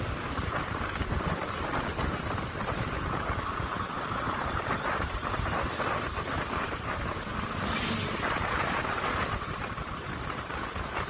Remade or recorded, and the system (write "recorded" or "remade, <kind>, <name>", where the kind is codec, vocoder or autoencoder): remade, vocoder, BigVGAN v2